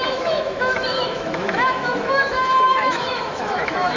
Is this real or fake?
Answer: fake